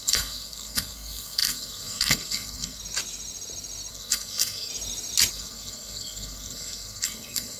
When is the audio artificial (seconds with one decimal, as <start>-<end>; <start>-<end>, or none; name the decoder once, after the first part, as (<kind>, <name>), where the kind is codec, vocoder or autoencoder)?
0.0-2.8 (codec, SNAC); 3.9-4.7; 5.3-7.6